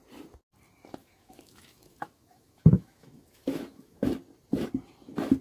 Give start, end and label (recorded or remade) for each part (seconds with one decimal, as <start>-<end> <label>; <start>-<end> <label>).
0.0-1.0 recorded; 1.0-4.1 remade; 4.1-5.4 recorded